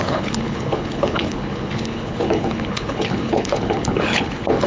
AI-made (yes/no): yes